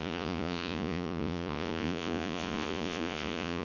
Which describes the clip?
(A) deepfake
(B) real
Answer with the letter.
A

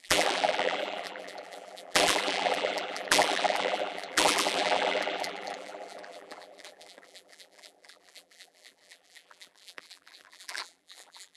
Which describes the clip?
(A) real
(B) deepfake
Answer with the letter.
B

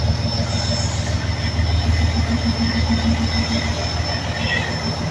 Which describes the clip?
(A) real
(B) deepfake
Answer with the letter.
A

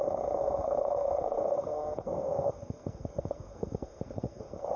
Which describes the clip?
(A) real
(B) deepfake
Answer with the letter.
B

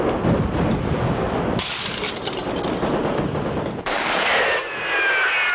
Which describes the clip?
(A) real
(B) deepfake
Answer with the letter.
A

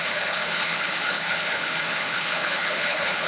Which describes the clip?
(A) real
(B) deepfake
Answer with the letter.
B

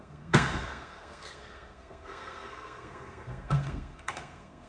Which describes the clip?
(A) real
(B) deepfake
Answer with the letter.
B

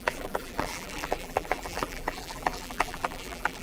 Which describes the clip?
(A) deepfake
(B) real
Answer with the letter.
A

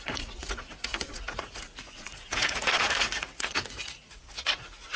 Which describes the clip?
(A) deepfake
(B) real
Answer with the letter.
A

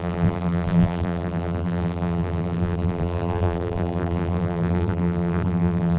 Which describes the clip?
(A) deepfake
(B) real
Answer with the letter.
A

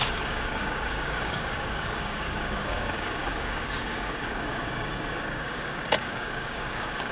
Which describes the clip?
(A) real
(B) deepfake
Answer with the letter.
B